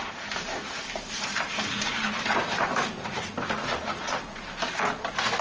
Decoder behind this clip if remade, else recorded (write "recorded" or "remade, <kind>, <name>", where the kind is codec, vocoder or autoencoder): remade, vocoder, BigVGAN v2